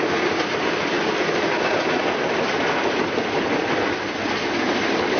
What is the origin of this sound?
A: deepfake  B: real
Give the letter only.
B